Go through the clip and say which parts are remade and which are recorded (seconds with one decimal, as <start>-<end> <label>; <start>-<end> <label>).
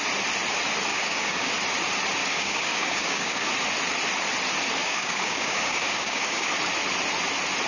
0.0-0.9 recorded; 0.9-1.5 remade; 1.5-2.2 recorded; 2.2-3.5 remade; 3.5-4.8 recorded; 4.8-6.5 remade; 6.5-7.7 recorded